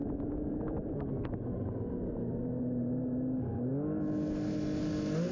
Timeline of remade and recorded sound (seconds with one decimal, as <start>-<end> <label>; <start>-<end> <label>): 0.0-3.2 remade; 3.2-5.3 recorded